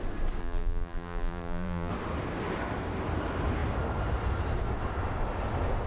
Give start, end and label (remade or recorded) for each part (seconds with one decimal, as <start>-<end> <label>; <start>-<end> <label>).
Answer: 0.0-0.4 recorded; 0.4-1.9 remade; 1.9-5.9 recorded